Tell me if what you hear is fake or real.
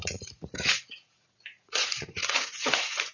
fake